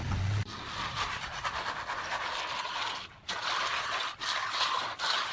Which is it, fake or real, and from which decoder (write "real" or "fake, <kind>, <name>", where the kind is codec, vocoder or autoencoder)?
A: real